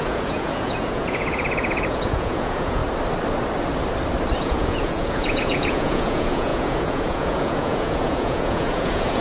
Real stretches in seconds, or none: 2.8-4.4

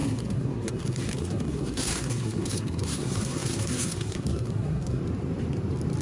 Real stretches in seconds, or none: 5.0-6.0